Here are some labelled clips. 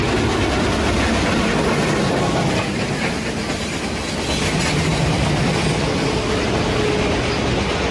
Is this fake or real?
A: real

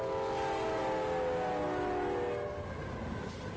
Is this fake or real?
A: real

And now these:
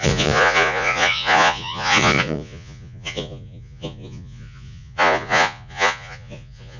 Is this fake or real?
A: fake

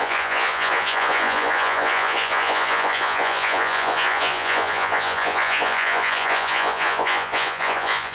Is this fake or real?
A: fake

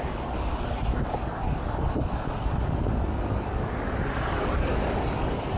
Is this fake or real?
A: fake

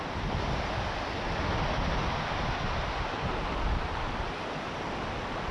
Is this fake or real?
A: real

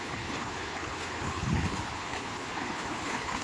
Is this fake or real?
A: fake